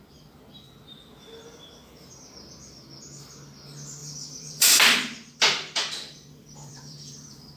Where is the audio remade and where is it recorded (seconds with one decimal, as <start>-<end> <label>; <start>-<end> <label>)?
0.0-4.0 recorded; 4.0-7.6 remade

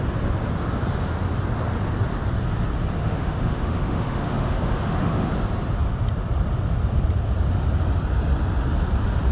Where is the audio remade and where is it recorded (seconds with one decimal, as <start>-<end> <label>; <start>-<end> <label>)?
0.0-3.0 recorded; 3.0-5.3 remade; 5.3-9.3 recorded

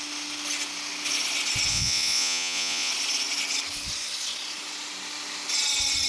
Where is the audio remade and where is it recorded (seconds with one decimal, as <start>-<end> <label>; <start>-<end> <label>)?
0.0-1.7 recorded; 1.7-2.9 remade; 2.9-6.1 recorded

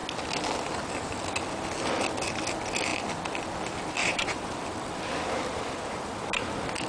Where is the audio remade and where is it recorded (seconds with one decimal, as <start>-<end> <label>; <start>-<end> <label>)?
0.0-4.0 recorded; 4.0-4.6 remade; 4.6-6.9 recorded

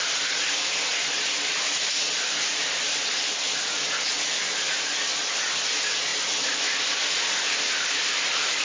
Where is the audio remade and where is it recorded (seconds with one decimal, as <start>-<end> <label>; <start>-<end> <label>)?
0.0-8.6 recorded

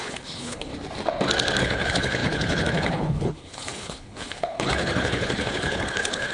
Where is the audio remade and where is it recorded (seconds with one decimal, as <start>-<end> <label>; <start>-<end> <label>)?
0.0-0.7 remade; 0.7-1.6 recorded; 1.6-6.3 remade

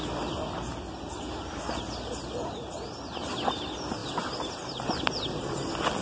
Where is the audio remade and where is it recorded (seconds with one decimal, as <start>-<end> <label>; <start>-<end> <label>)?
0.0-6.0 recorded